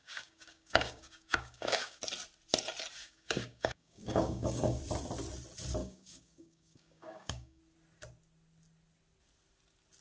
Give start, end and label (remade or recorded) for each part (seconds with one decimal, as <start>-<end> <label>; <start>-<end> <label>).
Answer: 0.0-2.0 remade; 2.0-3.0 recorded; 3.0-4.8 remade; 4.8-5.8 recorded; 5.8-7.6 remade; 7.6-10.0 recorded